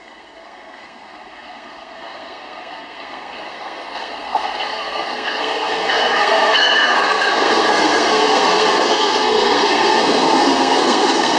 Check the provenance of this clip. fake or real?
fake